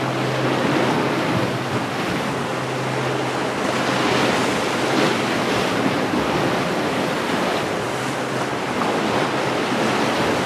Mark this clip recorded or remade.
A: recorded